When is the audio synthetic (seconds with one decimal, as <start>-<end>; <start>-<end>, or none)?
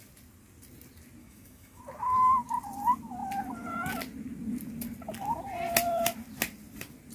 1.2-1.8